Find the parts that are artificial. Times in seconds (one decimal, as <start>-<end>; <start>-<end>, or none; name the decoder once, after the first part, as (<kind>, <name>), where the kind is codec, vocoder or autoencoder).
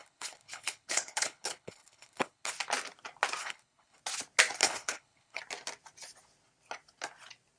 0.0-2.5 (codec, HILCodec); 3.4-4.0; 4.6-5.4